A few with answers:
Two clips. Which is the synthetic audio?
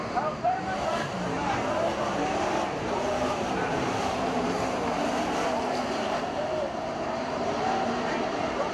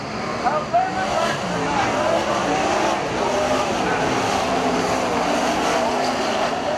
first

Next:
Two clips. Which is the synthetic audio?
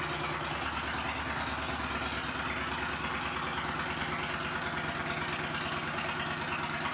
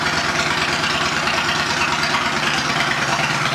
second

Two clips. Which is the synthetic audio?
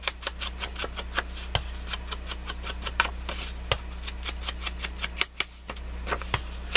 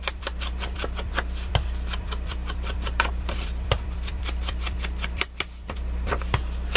second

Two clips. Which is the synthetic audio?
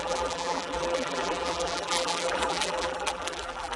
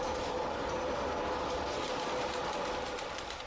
first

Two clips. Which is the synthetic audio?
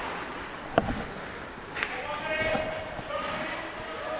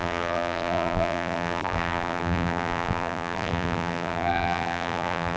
second